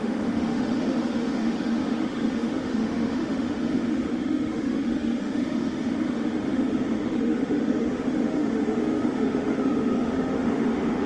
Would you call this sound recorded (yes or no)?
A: no